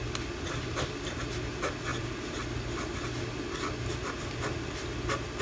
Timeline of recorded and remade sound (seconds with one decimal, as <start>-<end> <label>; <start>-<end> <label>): 0.0-5.4 recorded